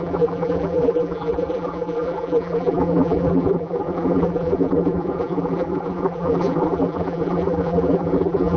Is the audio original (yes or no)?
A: no